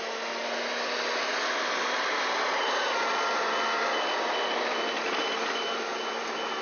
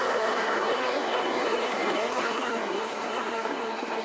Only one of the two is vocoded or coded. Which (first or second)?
second